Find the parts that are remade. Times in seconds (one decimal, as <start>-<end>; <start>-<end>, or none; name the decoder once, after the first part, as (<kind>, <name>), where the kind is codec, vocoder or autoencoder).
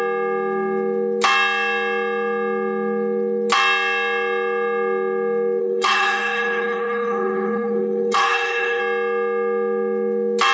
5.6-8.8 (codec, HILCodec)